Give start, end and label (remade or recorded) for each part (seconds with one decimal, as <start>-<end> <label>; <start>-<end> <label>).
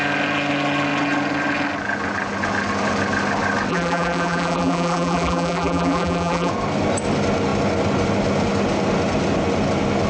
0.0-3.7 recorded; 3.7-6.5 remade; 6.5-10.1 recorded